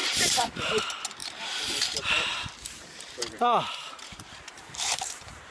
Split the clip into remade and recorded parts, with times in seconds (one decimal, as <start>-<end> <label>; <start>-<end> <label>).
0.0-5.5 remade

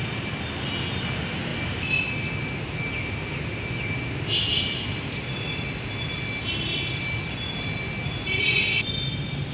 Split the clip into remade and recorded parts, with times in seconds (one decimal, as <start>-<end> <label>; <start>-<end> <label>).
0.0-9.5 recorded

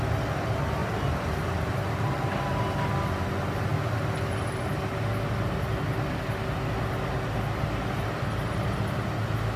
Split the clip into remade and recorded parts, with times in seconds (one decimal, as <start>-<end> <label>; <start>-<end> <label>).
0.0-0.8 recorded; 0.8-2.9 remade; 2.9-9.6 recorded

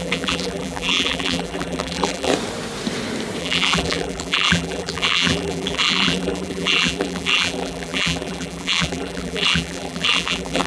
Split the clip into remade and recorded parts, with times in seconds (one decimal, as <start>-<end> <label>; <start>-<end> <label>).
0.0-2.3 remade; 2.3-3.4 recorded; 3.4-10.7 remade